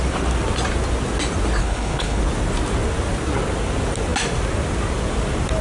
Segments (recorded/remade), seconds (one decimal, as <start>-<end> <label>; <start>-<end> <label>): 0.0-1.6 recorded; 1.6-2.2 remade; 2.2-5.6 recorded